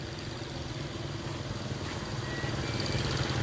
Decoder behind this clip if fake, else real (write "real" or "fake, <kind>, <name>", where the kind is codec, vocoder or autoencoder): real